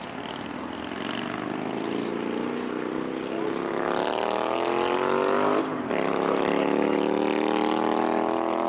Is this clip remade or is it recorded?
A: recorded